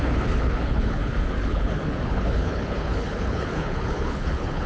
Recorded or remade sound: remade